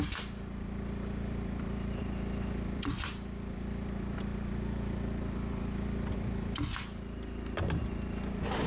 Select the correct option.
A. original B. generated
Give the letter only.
B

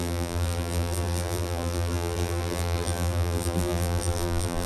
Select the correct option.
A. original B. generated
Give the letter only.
B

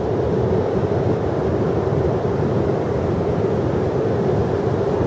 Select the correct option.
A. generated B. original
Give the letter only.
B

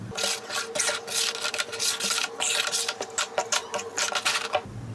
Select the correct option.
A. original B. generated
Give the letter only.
A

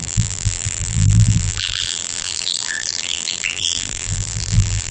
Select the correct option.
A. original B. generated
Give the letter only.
B